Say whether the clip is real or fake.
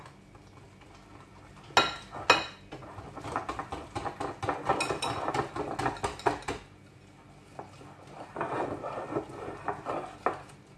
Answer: real